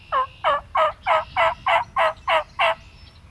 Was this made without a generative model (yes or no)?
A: yes